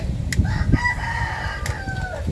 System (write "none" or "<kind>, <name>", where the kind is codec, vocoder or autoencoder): none